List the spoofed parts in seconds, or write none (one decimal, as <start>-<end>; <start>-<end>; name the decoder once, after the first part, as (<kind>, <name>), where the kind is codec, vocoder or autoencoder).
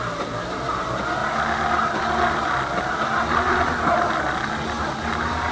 none